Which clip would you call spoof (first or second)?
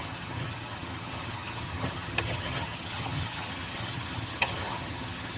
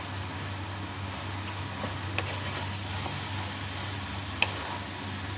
first